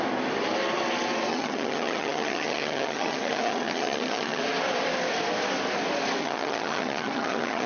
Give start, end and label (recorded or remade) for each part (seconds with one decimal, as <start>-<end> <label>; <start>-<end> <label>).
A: 0.0-1.3 recorded; 1.3-4.4 remade; 4.4-6.2 recorded; 6.2-7.7 remade